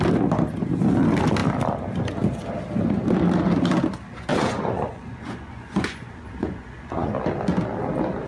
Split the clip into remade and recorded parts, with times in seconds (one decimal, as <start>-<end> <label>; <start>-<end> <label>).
0.0-4.3 recorded; 4.3-7.1 remade; 7.1-8.3 recorded

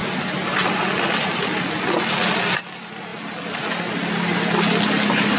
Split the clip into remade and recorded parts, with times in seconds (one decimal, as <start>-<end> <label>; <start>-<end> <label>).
0.0-5.4 recorded